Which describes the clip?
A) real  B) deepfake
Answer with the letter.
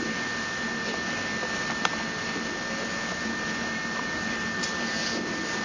A